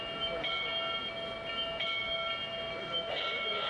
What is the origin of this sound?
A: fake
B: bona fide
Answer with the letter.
B